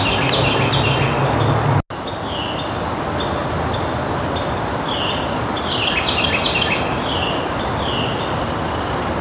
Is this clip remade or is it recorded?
recorded